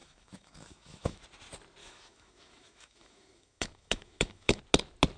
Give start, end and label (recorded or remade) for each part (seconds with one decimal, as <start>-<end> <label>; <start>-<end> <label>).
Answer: 0.0-1.2 remade; 1.2-1.8 recorded; 1.8-4.6 remade; 4.6-5.2 recorded